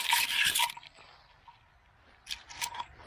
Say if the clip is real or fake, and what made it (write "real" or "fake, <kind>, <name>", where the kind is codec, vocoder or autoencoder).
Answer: real